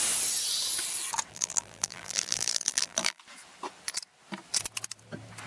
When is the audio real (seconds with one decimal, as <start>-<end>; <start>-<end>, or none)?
0.0-1.3; 3.2-5.5